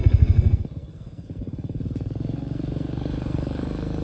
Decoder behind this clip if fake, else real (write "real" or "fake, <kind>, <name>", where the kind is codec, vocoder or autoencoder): fake, codec, SNAC